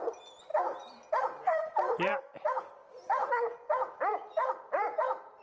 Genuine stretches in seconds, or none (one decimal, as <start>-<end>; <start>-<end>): 0.5-1.1; 2.1-5.4